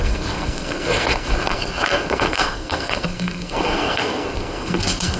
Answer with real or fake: fake